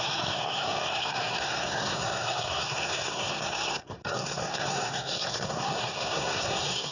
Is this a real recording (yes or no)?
no